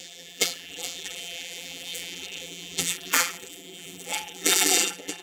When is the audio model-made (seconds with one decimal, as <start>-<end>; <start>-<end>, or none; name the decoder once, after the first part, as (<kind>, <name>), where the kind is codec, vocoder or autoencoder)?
0.0-5.2 (vocoder, BigVGAN v2)